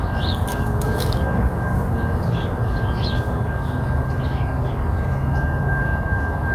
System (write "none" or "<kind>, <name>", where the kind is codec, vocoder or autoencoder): codec, DAC